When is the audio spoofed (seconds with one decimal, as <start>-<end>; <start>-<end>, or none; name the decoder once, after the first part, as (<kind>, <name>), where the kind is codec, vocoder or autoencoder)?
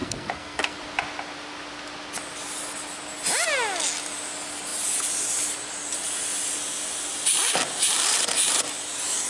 0.0-0.8 (codec, SNAC)